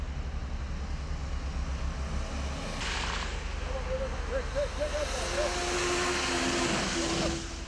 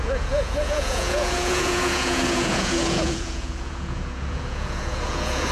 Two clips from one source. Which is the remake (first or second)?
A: second